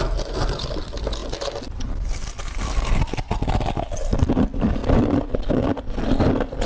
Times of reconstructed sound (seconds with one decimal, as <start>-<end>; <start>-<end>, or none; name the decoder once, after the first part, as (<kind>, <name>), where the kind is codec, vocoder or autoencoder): none

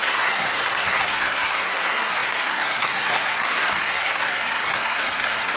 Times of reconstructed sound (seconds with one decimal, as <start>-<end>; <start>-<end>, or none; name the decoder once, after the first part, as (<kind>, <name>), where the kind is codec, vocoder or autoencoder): 0.0-5.6 (codec, SNAC)